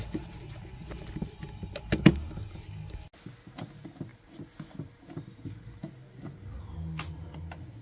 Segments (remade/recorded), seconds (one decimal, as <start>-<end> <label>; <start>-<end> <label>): 0.0-4.1 recorded; 4.1-7.0 remade; 7.0-7.8 recorded

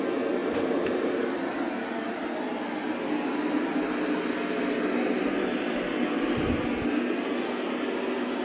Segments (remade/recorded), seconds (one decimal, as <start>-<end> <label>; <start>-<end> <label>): 0.0-0.4 recorded; 0.4-1.1 remade; 1.1-8.4 recorded

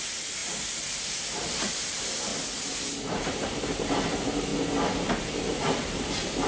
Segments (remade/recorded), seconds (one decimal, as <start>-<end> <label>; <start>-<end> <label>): 0.0-2.3 remade; 2.3-3.1 recorded; 3.1-4.5 remade; 4.5-5.4 recorded; 5.4-6.5 remade

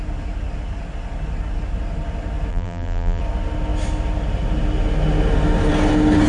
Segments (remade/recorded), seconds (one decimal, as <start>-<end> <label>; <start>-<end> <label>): 0.0-2.5 recorded; 2.5-3.2 remade; 3.2-6.3 recorded

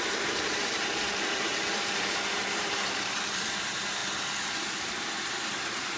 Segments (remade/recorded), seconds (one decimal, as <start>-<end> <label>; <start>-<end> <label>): 0.0-4.0 remade; 4.0-4.8 recorded; 4.8-6.0 remade

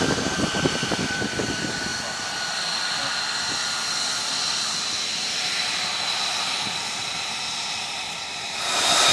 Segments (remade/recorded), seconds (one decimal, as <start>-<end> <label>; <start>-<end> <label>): 0.0-1.9 remade; 1.9-5.5 recorded; 5.5-9.1 remade

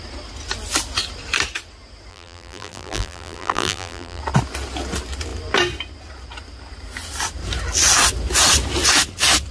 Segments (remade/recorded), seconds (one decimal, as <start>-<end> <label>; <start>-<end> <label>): 0.0-2.1 recorded; 2.1-4.2 remade; 4.2-9.5 recorded